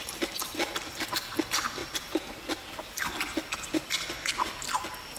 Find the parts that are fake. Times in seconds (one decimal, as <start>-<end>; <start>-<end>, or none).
none

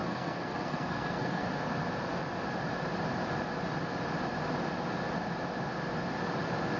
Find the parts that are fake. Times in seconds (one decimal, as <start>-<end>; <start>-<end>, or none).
0.0-1.5

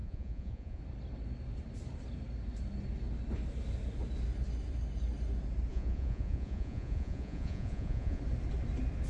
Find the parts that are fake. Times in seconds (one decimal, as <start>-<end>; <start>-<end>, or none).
0.0-0.8; 5.7-8.2

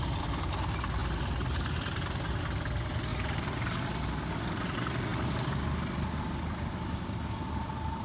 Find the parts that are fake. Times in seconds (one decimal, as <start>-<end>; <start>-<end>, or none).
1.0-2.1; 3.1-3.8

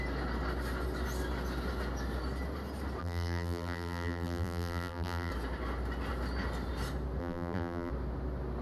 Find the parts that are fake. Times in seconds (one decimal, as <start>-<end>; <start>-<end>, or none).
3.0-5.3; 7.2-7.9

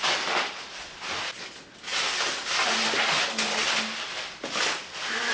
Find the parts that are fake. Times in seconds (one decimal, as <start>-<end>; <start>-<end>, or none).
none

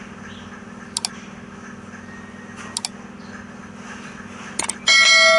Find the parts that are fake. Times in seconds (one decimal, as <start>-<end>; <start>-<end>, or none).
none